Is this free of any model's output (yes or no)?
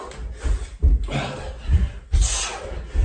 yes